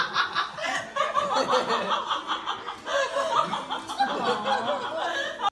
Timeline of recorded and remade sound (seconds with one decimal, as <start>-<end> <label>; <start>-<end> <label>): 0.0-5.5 recorded